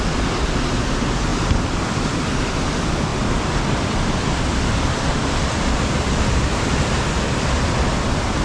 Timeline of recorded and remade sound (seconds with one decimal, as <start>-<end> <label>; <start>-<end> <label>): 0.0-1.3 recorded; 1.3-2.6 remade; 2.6-3.1 recorded; 3.1-6.9 remade; 6.9-8.4 recorded